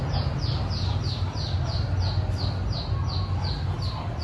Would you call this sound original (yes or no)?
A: yes